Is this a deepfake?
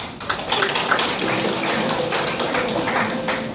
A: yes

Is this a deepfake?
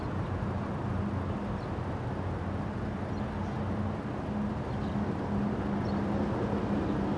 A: no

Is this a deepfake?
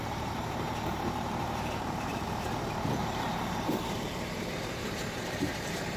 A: yes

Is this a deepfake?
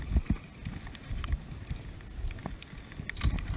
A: no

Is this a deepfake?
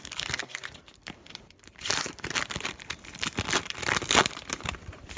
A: yes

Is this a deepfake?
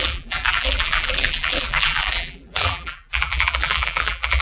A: yes